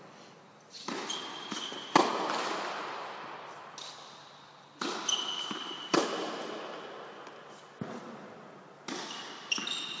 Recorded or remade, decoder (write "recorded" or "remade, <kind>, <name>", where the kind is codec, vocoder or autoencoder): recorded